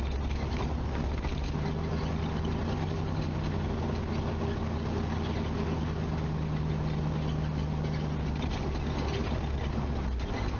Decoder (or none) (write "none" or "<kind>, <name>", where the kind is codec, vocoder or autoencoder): none